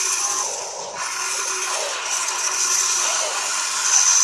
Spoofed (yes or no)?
yes